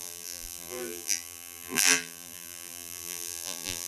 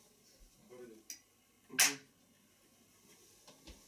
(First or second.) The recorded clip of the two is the second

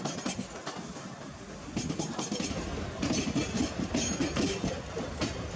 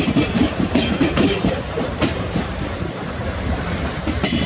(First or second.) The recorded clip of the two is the first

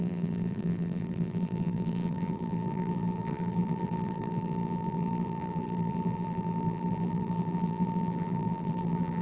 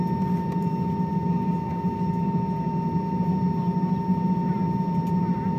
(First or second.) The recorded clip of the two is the second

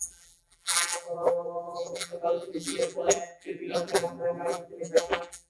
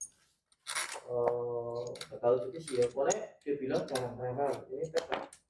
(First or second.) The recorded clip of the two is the second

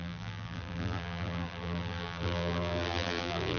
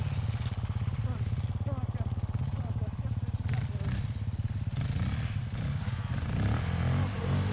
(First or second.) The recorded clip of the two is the second